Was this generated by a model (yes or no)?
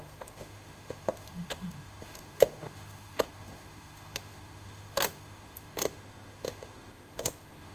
yes